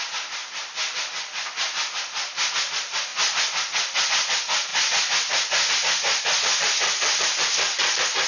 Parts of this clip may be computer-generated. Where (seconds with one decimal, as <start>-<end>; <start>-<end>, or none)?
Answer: none